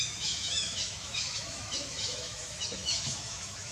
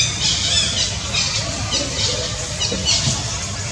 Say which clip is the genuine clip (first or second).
second